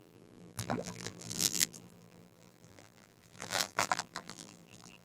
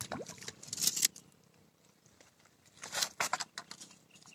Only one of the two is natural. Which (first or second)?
second